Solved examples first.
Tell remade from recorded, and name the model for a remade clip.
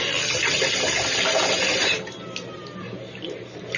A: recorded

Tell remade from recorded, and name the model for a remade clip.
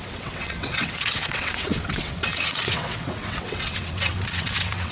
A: remade, vocoder, WaveNeXt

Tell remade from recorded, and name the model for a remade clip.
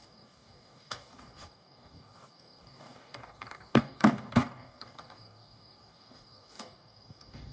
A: remade, codec, DAC